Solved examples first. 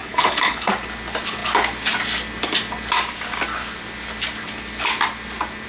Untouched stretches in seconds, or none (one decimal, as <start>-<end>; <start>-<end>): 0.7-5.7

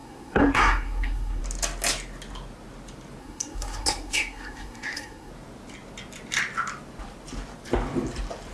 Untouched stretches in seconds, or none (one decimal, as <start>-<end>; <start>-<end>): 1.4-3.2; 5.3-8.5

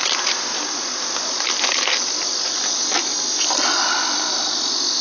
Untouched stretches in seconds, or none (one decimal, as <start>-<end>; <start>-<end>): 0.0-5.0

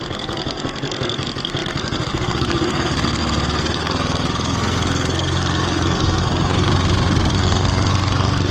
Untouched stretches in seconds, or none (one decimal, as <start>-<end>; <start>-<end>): 6.7-7.3

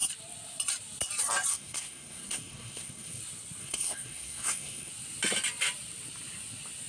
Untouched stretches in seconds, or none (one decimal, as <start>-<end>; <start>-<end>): 0.0-1.5; 3.2-3.6; 4.9-6.9

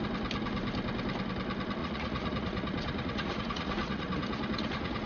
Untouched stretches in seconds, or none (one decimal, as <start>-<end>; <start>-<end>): 0.0-1.8

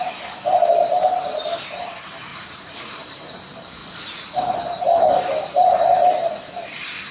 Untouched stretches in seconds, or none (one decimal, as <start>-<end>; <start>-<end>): 0.0-2.3; 2.9-3.8; 4.5-7.1